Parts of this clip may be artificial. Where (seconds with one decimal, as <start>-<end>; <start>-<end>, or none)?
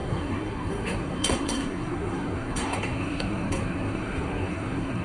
0.0-5.0